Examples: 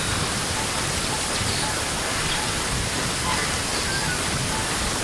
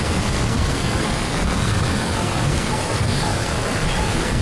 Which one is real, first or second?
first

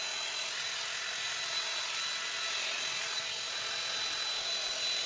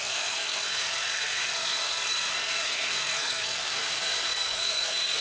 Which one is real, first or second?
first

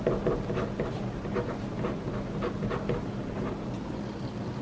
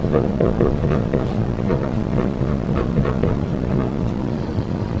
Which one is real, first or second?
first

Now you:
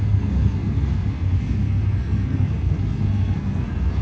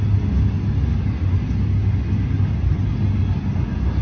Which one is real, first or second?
second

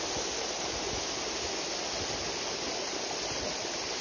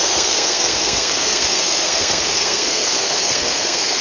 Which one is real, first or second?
first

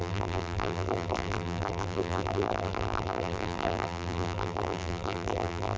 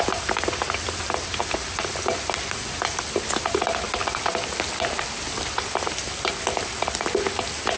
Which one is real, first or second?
second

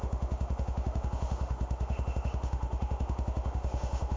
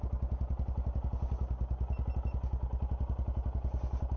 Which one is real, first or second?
second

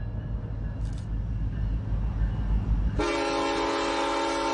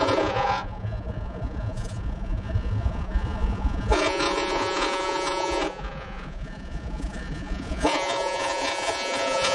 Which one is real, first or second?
first